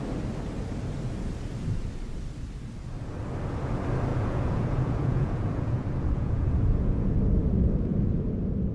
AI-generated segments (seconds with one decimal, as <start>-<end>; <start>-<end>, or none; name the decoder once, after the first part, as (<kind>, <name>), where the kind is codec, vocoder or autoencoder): 4.1-7.1 (vocoder, Vocos)